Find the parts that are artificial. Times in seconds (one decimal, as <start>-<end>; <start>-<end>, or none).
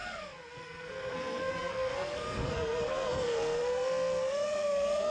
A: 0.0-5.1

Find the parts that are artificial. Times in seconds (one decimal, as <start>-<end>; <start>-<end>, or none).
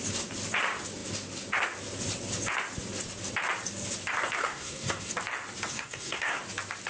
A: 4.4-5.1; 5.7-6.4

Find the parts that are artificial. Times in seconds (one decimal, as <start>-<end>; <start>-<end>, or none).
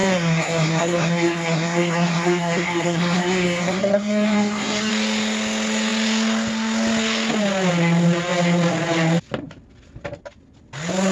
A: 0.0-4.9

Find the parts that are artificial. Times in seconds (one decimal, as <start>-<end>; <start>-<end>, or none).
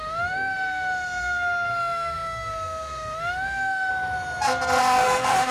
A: 0.0-3.9; 4.8-5.5